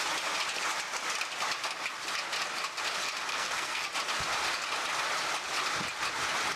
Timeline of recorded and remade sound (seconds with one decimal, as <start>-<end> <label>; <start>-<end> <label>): 0.0-3.3 recorded; 3.3-3.9 remade; 3.9-6.6 recorded